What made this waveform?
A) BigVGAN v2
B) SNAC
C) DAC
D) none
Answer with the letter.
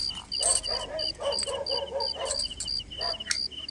D